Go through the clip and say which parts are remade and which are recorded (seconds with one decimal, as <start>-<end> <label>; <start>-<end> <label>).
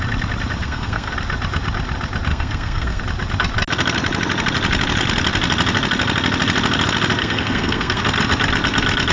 0.0-0.6 recorded; 0.6-1.1 remade; 1.1-2.3 recorded; 2.3-3.0 remade; 3.0-7.2 recorded; 7.2-8.0 remade; 8.0-9.1 recorded